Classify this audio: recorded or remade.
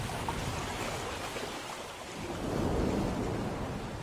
remade